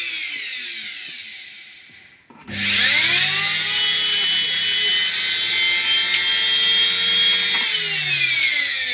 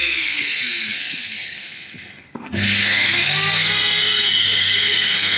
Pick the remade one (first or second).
second